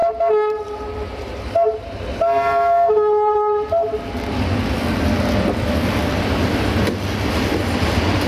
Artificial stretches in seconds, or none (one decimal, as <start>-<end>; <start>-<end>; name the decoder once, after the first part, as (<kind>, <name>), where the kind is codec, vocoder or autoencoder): none